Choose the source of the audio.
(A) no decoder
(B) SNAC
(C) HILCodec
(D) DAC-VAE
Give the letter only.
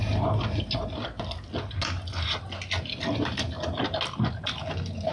A